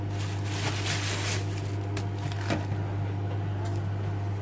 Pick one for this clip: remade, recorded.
recorded